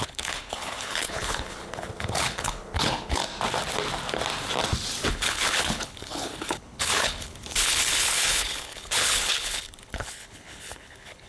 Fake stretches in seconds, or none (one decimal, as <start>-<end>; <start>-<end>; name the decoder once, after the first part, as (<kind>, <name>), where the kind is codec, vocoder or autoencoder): 0.0-3.2 (codec, HILCodec); 5.1-11.3